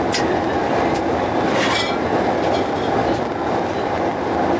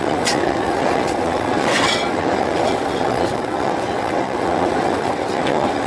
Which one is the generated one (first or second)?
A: second